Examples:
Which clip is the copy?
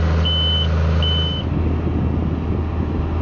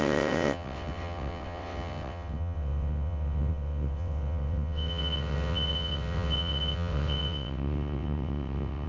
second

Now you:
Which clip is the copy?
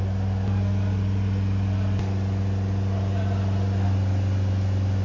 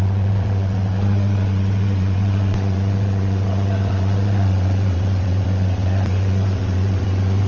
second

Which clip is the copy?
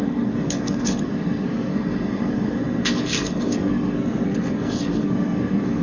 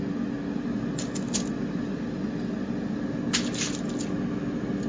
first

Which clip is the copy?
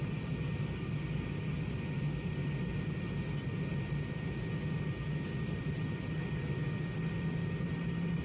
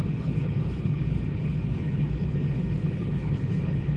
second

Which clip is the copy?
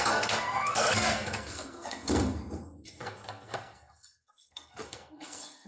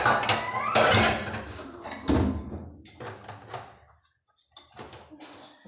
first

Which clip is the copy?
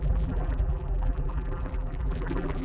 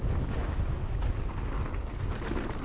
first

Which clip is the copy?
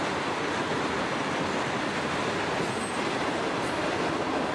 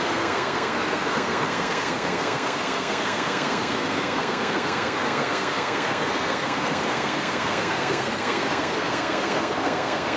second